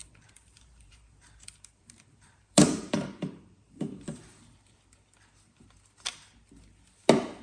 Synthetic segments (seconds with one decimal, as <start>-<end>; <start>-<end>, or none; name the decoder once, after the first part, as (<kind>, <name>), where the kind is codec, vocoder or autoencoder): 0.0-4.4 (vocoder, BigVGAN v2)